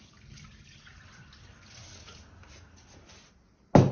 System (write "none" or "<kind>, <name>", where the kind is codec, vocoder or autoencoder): none